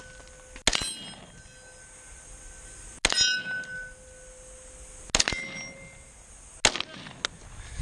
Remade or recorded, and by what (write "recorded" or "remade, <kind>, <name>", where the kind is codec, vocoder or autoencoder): recorded